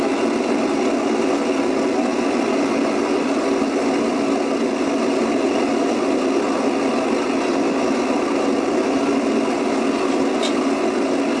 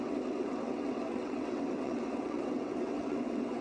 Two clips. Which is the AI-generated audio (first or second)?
second